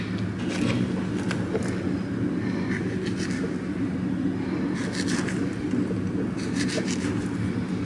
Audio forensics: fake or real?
real